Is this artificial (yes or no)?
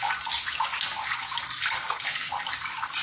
no